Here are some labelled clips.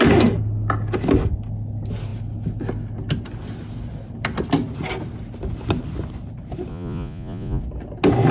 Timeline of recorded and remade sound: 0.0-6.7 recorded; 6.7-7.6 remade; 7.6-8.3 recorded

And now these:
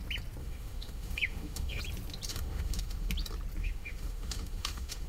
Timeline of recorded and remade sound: 0.0-0.4 recorded; 0.4-1.8 remade; 1.8-2.3 recorded; 2.3-3.1 remade; 3.1-3.6 recorded; 3.6-5.1 remade

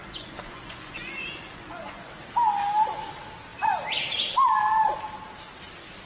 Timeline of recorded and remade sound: 0.0-2.1 remade; 2.1-6.1 recorded

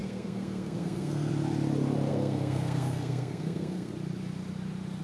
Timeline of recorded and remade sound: 0.0-1.3 remade; 1.3-2.1 recorded; 2.1-3.9 remade; 3.9-5.0 recorded

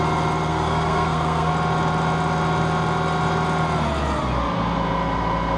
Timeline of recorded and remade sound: 0.0-0.5 recorded; 0.5-1.5 remade; 1.5-5.6 recorded

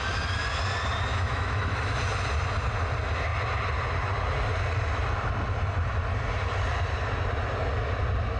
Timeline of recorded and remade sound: 0.0-1.1 recorded; 1.1-2.0 remade; 2.0-8.4 recorded